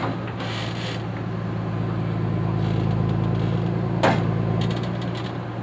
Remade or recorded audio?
recorded